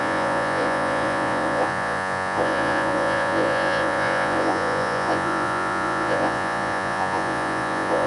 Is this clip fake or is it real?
fake